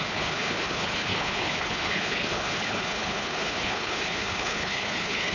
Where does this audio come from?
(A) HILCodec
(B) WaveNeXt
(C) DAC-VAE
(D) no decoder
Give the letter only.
A